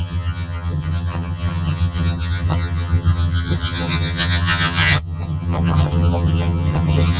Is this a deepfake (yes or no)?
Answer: yes